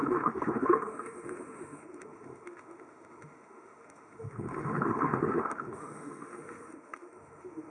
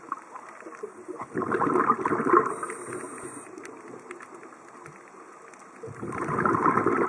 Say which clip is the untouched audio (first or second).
second